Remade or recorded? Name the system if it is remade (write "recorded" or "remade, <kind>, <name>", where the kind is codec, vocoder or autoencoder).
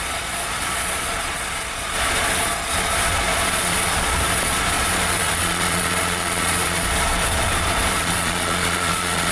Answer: remade, vocoder, Vocos